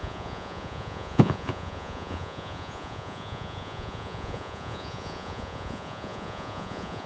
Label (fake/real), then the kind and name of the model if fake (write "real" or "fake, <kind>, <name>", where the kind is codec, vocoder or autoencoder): fake, vocoder, Vocos